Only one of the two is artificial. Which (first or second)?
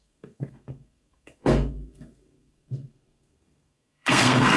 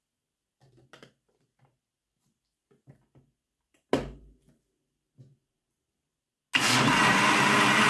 first